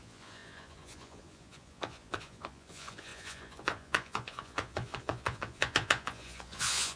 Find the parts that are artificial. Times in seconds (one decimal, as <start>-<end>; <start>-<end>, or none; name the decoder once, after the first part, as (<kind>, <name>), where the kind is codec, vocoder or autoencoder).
0.0-7.0 (vocoder, Vocos)